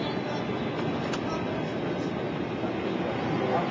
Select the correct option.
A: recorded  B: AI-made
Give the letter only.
A